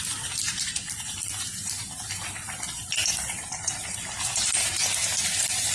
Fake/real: real